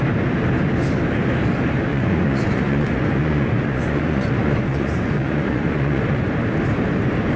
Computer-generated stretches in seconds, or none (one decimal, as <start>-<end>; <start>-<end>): 1.9-6.3